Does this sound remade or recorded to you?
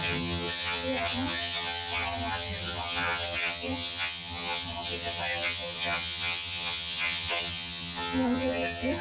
remade